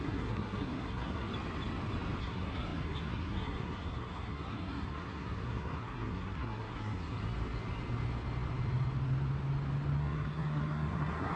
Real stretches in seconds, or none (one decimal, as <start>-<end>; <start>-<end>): 1.3-2.2; 7.2-10.0